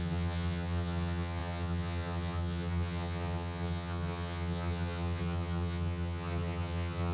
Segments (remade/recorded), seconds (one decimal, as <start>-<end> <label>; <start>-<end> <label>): 0.0-7.1 remade